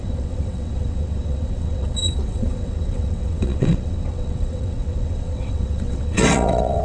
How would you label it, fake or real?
fake